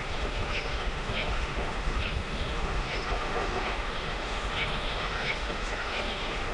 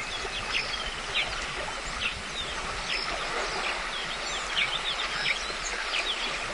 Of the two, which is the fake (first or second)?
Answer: first